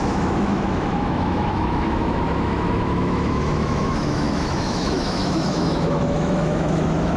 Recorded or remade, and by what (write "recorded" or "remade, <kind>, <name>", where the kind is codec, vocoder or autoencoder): remade, autoencoder, DAC-VAE